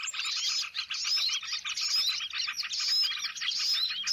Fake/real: real